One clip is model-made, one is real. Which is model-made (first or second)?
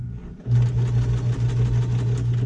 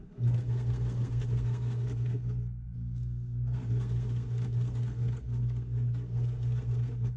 second